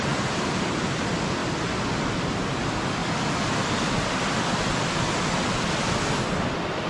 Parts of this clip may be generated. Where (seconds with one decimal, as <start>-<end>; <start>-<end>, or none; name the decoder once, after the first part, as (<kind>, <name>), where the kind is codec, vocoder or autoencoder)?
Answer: none